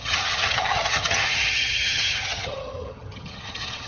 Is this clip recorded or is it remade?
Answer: remade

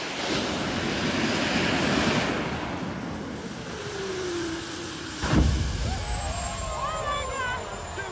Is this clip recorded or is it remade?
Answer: recorded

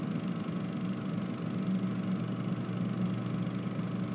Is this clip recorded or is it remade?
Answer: recorded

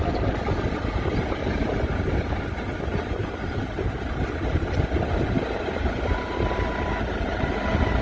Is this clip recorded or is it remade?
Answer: recorded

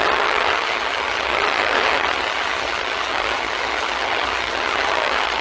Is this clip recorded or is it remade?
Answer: remade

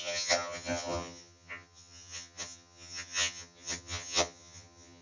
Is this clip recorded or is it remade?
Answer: remade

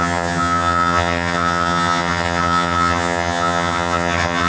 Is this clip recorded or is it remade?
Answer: remade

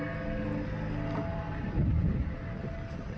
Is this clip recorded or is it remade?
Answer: recorded